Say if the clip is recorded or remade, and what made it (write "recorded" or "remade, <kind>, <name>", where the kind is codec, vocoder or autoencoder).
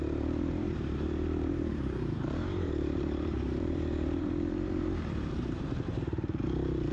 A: remade, vocoder, BigVGAN v2